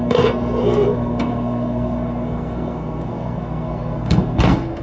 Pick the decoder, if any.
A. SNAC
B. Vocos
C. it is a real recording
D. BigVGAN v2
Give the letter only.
A